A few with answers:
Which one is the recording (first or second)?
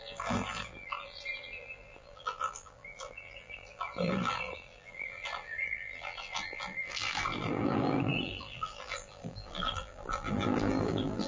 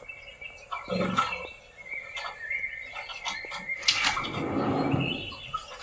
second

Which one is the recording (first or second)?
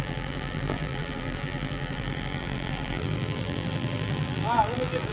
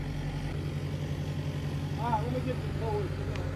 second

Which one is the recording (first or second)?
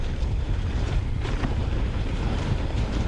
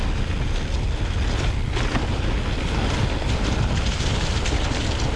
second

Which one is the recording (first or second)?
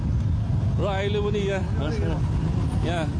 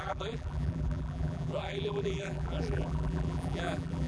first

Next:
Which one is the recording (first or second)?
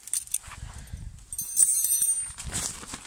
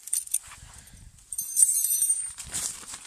first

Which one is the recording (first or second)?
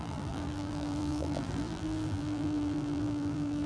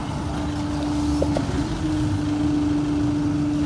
second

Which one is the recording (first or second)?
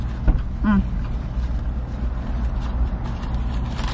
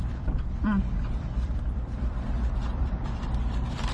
first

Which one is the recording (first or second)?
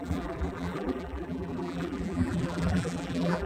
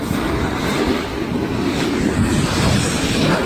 second